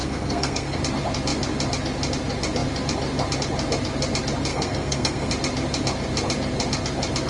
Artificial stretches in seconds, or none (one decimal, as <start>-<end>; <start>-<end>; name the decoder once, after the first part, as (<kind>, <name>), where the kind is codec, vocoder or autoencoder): 0.0-0.8 (codec, SNAC); 4.5-5.3